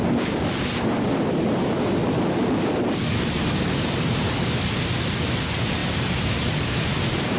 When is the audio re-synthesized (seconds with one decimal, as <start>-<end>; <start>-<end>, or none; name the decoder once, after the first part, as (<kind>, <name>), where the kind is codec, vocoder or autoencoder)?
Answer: 0.0-2.0 (vocoder, BigVGAN v2); 3.3-6.9